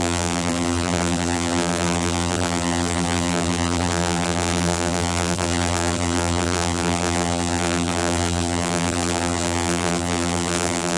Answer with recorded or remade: remade